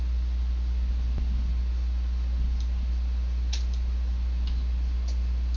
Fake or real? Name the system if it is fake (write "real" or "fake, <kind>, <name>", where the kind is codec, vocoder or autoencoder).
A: real